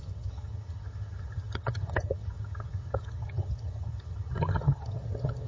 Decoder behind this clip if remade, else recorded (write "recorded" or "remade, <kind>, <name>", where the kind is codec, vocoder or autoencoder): remade, vocoder, HiFi-GAN